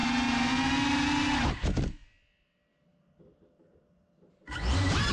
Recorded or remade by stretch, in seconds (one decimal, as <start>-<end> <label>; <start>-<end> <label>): 0.0-5.1 recorded